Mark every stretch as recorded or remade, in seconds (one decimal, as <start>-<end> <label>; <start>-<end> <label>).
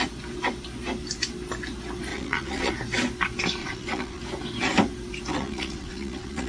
0.0-2.1 recorded; 2.1-2.7 remade; 2.7-3.6 recorded; 3.6-4.2 remade; 4.2-5.3 recorded; 5.3-6.5 remade